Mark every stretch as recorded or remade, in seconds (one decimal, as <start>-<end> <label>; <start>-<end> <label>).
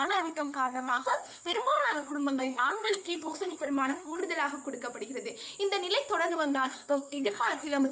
0.0-4.2 remade; 4.2-6.3 recorded; 6.3-7.9 remade